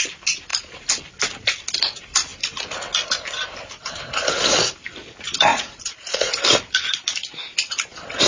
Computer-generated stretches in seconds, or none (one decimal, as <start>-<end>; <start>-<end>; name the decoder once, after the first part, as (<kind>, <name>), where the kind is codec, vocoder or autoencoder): 5.5-6.3 (vocoder, Vocos)

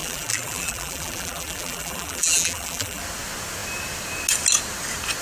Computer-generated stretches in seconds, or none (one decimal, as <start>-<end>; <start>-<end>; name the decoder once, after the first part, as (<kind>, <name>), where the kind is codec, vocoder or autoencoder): 0.0-3.0 (vocoder, BigVGAN v2)

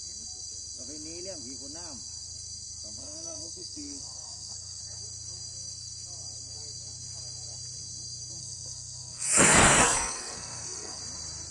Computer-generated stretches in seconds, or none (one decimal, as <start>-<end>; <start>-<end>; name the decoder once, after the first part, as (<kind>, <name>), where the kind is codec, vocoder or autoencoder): 3.0-4.8 (codec, SNAC); 8.4-11.0

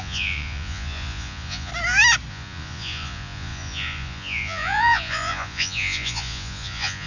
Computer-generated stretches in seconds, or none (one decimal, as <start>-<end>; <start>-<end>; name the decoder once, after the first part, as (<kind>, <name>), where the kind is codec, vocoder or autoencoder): 0.0-1.7 (vocoder, Vocos); 2.3-7.1

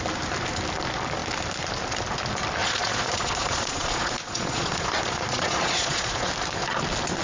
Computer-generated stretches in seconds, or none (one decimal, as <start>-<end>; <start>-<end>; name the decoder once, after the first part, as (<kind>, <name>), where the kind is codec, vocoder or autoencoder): 2.6-6.3 (vocoder, Vocos)

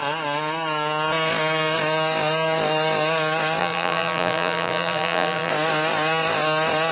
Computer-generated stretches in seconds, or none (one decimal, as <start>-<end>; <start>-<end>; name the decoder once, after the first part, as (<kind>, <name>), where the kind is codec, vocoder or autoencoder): 3.6-5.5 (vocoder, BigVGAN v2)

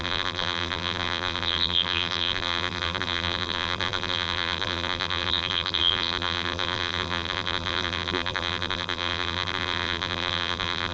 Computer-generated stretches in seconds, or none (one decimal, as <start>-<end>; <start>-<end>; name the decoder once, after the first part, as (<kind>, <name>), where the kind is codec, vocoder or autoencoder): 0.0-10.9 (vocoder, BigVGAN v2)

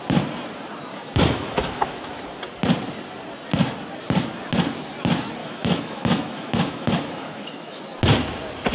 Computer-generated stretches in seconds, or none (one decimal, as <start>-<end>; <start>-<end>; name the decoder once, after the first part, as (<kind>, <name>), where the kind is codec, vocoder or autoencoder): 0.9-2.1 (autoencoder, DAC-VAE); 5.4-7.8